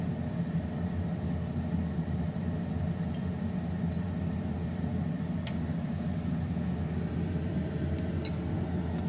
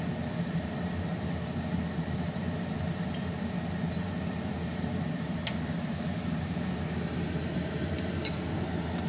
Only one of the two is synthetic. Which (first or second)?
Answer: second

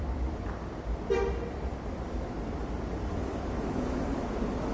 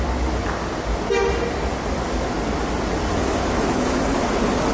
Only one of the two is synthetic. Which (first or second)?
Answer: first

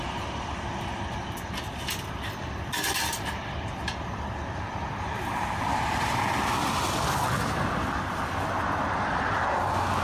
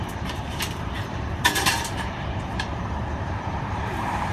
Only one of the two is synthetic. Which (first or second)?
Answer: second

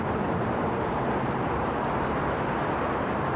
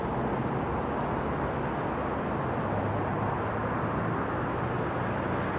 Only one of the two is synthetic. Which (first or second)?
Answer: first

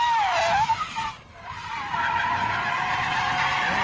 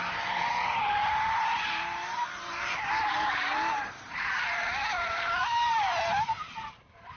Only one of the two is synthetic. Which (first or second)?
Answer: second